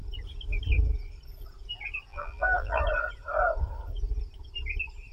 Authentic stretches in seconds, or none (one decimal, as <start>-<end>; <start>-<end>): 0.0-2.1; 2.8-5.1